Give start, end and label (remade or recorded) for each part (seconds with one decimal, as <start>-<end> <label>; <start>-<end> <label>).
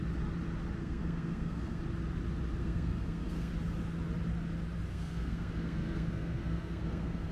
0.0-0.8 recorded; 0.8-1.8 remade; 1.8-2.6 recorded; 2.6-3.5 remade; 3.5-4.9 recorded; 4.9-7.3 remade